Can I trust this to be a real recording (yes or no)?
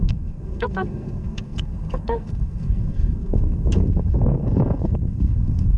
no